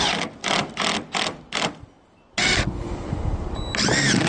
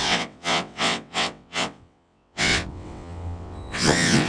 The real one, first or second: first